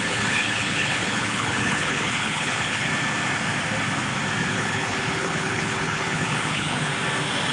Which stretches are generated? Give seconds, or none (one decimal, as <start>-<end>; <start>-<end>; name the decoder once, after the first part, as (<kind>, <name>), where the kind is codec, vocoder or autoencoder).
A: 0.0-2.9 (codec, HILCodec); 4.5-6.9